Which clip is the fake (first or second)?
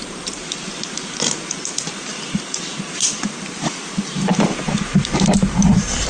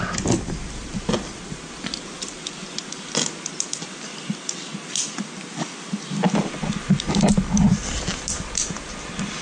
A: first